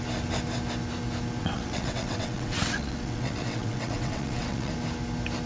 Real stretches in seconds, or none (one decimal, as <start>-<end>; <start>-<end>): 0.0-1.4; 4.7-5.5